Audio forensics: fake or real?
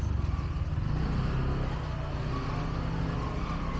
real